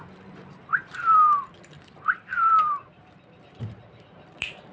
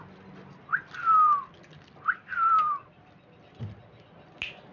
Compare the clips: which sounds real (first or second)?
second